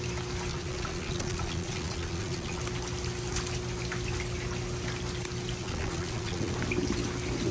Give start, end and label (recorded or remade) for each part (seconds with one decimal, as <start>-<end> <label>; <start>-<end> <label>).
0.0-0.5 recorded; 0.5-2.6 remade; 2.6-5.6 recorded; 5.6-6.5 remade; 6.5-7.5 recorded